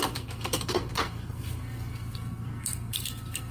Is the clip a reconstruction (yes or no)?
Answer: yes